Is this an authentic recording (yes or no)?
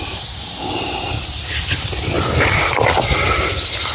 yes